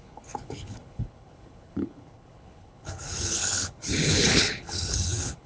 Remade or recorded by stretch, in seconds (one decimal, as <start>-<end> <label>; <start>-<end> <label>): 0.0-5.5 remade